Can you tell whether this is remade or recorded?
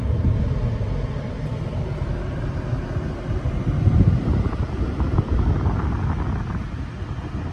recorded